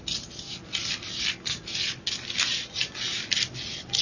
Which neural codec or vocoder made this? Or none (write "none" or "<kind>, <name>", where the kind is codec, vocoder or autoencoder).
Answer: none